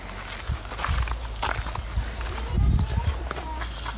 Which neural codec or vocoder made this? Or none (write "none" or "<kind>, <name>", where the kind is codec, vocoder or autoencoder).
none